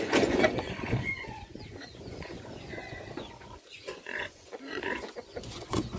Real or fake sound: fake